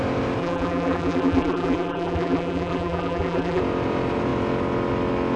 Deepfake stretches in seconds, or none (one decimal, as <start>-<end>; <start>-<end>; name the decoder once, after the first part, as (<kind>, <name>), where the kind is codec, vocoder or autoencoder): 0.4-3.6 (vocoder, BigVGAN v2)

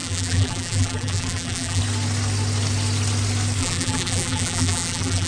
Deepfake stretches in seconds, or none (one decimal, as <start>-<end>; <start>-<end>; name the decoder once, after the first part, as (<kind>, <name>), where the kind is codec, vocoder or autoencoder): 0.0-1.8 (vocoder, BigVGAN v2); 3.6-5.3

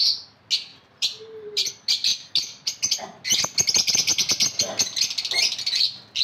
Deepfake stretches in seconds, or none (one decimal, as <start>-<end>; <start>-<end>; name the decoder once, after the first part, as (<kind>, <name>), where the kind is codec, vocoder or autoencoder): 0.7-1.7 (vocoder, BigVGAN v2)

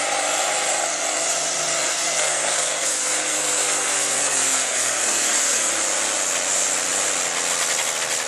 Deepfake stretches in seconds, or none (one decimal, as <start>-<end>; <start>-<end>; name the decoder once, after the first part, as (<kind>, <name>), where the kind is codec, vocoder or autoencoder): 1.9-5.7 (codec, SNAC)

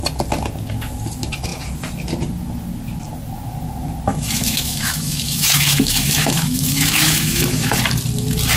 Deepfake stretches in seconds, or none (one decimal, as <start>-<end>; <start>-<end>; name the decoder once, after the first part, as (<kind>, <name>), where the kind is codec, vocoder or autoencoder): 4.1-7.7 (autoencoder, DAC-VAE)

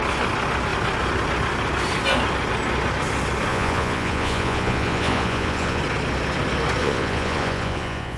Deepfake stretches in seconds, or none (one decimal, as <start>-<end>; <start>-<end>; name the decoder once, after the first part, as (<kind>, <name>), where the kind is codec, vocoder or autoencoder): 3.5-5.8 (vocoder, Vocos); 6.8-8.2

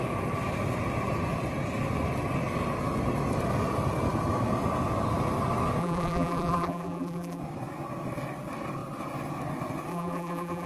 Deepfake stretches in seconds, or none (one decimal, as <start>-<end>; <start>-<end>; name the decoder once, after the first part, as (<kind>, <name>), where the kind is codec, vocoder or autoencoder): 5.8-7.4 (vocoder, BigVGAN v2); 9.9-10.7

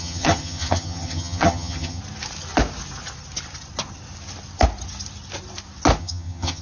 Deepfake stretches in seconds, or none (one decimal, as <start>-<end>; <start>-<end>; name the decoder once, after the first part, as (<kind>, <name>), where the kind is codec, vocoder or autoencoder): 0.0-2.0 (vocoder, HiFi-GAN); 6.0-6.6